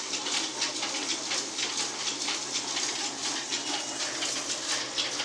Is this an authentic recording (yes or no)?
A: yes